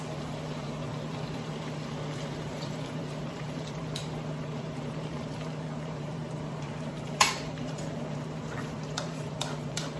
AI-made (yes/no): yes